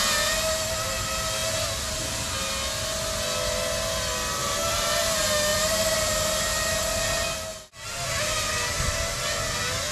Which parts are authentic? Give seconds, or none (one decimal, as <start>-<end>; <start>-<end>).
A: 0.0-4.4; 5.0-5.5; 6.8-7.5; 8.2-9.9